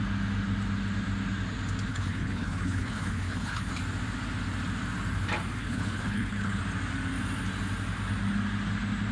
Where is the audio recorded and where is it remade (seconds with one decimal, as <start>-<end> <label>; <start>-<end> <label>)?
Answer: 0.0-1.9 recorded; 1.9-3.8 remade; 3.8-5.6 recorded; 5.6-6.6 remade; 6.6-9.1 recorded